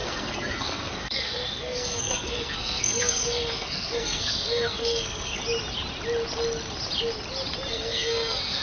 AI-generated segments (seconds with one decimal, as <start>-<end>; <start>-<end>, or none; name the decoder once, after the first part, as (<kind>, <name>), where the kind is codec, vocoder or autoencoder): 0.0-5.4 (codec, SNAC); 7.7-8.6